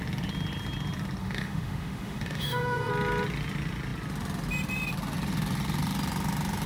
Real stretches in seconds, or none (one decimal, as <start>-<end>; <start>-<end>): 0.0-1.2; 2.9-6.7